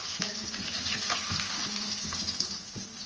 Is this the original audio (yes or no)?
yes